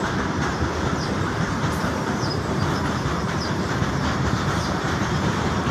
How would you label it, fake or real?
fake